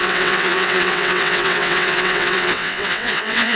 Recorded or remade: remade